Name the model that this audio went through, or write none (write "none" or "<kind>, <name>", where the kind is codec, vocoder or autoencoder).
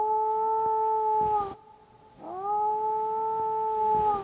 none